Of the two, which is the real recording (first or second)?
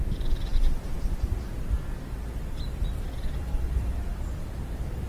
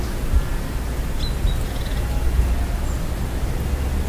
second